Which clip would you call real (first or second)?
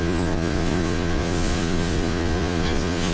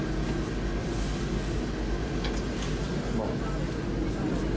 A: second